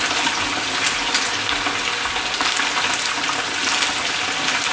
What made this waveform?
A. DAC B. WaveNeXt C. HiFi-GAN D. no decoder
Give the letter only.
D